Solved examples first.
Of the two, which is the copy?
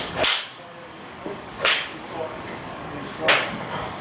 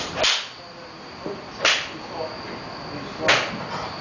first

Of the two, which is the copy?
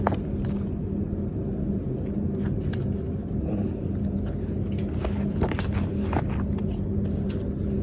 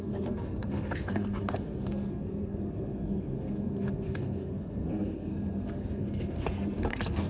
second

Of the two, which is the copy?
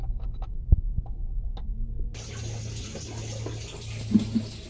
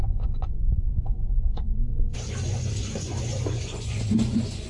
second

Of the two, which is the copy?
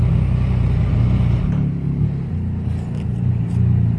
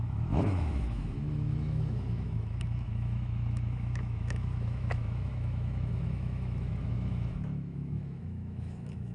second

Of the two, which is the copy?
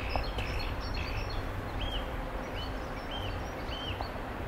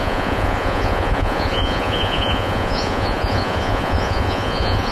second